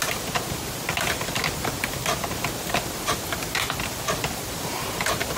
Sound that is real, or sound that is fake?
real